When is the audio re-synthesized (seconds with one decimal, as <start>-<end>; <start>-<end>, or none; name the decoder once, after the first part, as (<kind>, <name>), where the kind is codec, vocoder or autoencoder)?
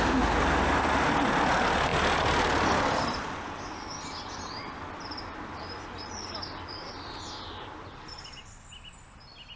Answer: none